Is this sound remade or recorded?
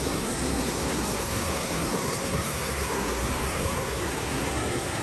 remade